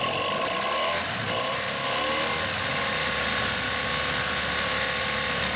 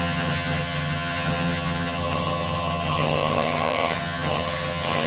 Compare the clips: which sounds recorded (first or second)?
first